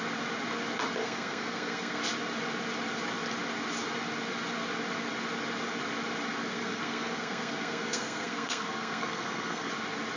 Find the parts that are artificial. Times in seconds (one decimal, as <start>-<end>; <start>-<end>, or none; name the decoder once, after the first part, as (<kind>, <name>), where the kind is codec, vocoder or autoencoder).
1.0-2.0 (codec, SNAC); 6.4-9.7